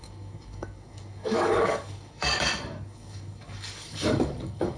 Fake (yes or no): yes